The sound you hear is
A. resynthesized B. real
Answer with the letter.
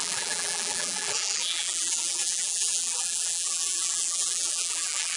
A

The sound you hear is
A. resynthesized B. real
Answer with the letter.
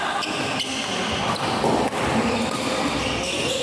B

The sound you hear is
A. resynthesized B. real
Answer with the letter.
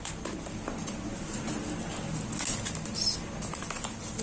B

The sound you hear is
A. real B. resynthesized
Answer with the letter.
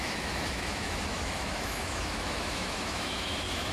B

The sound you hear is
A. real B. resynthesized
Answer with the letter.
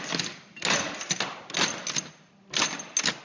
A